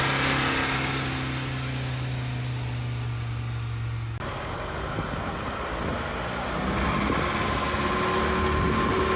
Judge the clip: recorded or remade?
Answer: recorded